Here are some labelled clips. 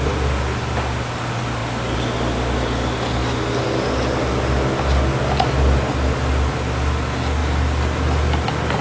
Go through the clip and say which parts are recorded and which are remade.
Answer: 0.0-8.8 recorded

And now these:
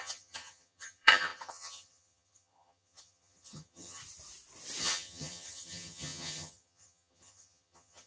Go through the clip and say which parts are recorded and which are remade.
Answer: 0.0-4.0 remade; 4.0-4.8 recorded; 4.8-8.1 remade

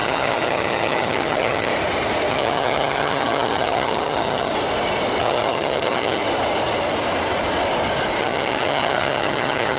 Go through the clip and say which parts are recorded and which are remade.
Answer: 0.0-1.7 remade; 1.7-2.3 recorded; 2.3-4.5 remade; 4.5-5.2 recorded; 5.2-6.2 remade; 6.2-8.2 recorded; 8.2-9.8 remade

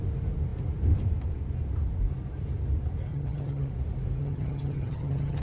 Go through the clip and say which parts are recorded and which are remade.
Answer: 0.0-3.1 recorded; 3.1-3.7 remade; 3.7-4.2 recorded; 4.2-5.4 remade

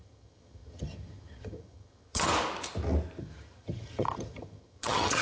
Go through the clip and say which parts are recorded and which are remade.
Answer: 0.0-2.3 remade; 2.3-3.2 recorded; 3.2-5.2 remade

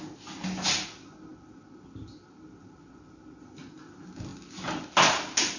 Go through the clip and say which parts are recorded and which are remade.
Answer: 0.0-5.6 recorded